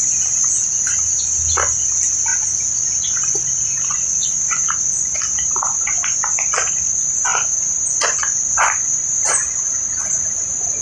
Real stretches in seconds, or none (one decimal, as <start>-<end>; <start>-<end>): 0.0-10.8

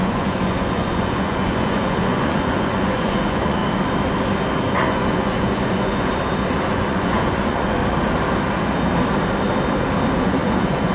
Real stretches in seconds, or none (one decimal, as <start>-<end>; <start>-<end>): 3.6-4.7; 6.1-6.7; 7.8-10.2

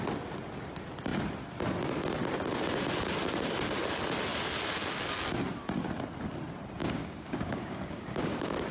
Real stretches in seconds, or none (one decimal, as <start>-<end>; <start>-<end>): 0.0-6.8